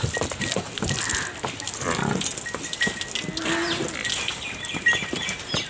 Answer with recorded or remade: recorded